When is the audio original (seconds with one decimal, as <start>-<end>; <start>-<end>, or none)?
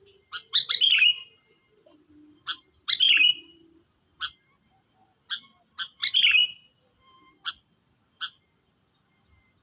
0.0-9.6